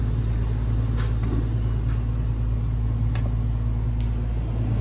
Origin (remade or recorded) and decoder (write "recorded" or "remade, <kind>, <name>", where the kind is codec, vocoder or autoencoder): recorded